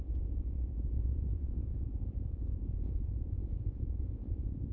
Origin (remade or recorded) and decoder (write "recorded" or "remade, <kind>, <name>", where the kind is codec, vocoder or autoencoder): remade, vocoder, Vocos